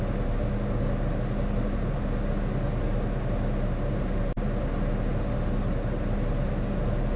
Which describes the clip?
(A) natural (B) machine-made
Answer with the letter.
A